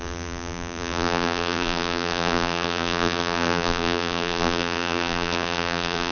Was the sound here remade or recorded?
remade